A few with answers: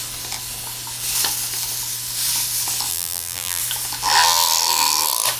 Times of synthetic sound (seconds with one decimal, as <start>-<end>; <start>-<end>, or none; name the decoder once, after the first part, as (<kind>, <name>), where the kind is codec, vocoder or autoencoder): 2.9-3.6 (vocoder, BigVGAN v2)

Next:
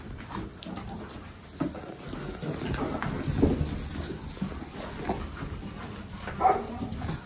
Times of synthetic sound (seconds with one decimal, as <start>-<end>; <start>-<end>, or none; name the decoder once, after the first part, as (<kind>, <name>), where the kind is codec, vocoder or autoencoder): none

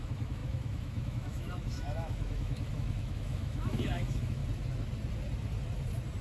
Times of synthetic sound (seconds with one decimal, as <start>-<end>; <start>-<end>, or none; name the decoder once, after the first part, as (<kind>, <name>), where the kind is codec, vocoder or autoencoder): 0.0-4.4 (autoencoder, DAC-VAE)

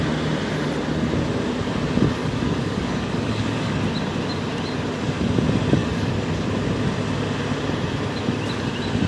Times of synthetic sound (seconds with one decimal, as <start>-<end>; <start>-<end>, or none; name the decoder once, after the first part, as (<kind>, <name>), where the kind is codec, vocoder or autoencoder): 2.2-3.8 (codec, DAC); 5.8-6.3

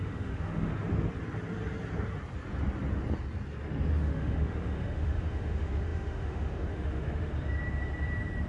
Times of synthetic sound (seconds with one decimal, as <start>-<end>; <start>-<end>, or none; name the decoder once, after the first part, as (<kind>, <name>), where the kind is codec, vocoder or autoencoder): 0.0-0.7 (autoencoder, DAC-VAE); 4.0-7.3

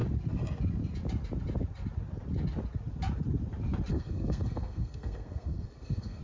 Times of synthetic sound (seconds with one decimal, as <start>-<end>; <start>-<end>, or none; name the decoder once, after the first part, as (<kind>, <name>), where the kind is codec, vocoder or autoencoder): 3.9-6.2 (codec, SNAC)

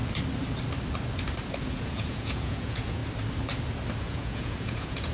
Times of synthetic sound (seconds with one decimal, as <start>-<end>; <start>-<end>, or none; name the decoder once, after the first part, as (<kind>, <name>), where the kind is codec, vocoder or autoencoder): 1.6-3.0 (vocoder, Vocos); 4.0-5.1

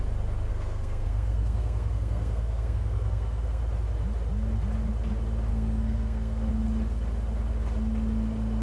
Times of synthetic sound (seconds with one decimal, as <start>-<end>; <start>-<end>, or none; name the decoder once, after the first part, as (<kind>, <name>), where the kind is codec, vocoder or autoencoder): 0.5-3.6 (codec, SNAC); 5.5-6.5